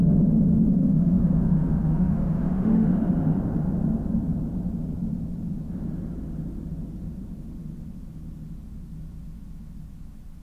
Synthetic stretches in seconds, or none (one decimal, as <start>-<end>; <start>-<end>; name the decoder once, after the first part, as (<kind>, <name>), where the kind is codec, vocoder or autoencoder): 0.8-2.9 (autoencoder, DAC-VAE)